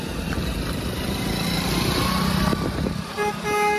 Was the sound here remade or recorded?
recorded